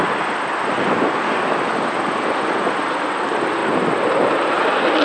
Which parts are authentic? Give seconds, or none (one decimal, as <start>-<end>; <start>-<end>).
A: 0.0-5.0